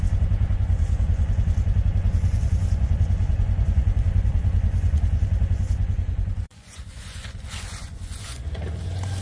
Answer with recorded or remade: remade